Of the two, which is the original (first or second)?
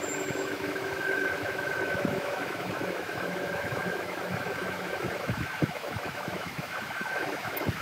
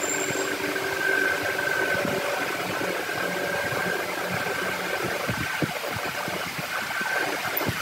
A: second